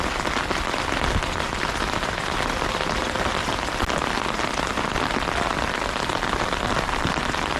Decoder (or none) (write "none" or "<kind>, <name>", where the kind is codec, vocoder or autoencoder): none